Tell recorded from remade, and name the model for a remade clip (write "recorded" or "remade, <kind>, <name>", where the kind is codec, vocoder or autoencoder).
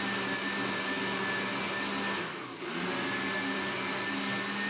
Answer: recorded